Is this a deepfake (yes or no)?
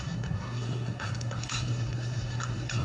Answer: yes